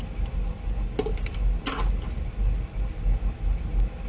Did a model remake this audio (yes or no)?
no